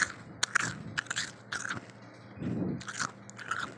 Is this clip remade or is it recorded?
recorded